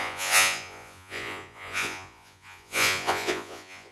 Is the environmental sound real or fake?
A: fake